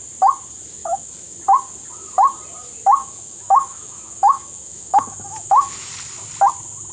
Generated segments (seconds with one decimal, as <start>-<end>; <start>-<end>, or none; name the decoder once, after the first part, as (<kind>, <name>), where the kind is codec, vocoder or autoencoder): 0.8-1.4 (autoencoder, DAC-VAE); 3.0-5.9